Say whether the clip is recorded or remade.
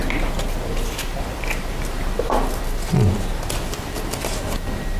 recorded